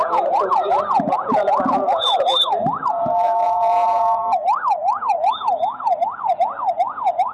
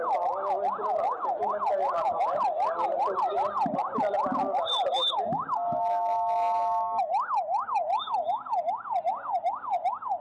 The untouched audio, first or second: second